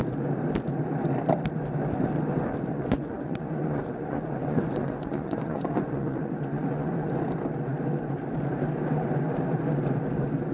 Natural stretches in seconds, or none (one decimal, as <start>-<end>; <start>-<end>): 0.0-2.7; 7.1-10.5